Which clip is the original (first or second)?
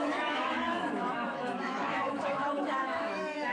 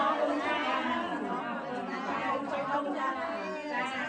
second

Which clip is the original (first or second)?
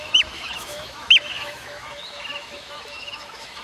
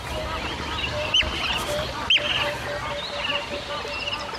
second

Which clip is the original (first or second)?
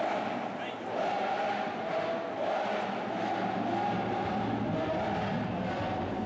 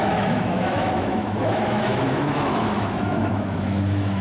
first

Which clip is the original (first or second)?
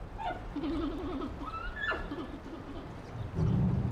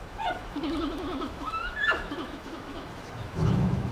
first